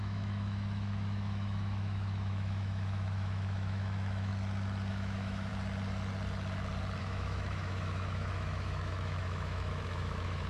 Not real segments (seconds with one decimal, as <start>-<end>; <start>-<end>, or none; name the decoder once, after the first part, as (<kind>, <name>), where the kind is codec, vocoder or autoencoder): 0.0-4.3 (autoencoder, DAC-VAE); 4.9-5.5; 7.0-10.5